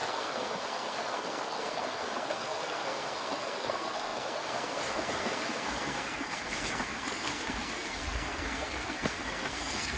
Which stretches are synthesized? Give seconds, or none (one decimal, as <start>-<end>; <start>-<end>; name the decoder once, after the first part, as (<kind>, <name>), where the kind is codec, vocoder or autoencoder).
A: 0.0-10.0 (codec, SNAC)